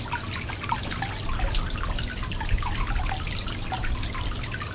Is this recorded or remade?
recorded